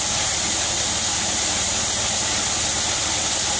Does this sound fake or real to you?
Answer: real